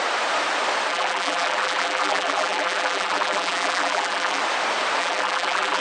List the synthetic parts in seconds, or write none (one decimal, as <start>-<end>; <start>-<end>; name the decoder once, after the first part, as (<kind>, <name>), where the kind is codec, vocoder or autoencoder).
0.9-4.4 (vocoder, BigVGAN v2); 5.0-5.8